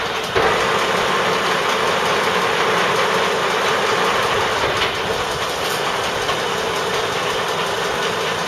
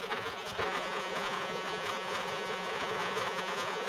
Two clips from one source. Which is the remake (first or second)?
second